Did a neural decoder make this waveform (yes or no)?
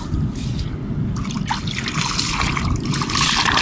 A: no